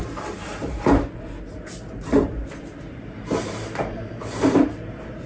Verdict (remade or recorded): remade